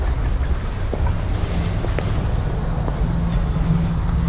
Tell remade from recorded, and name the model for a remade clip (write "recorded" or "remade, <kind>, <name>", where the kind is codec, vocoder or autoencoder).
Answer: recorded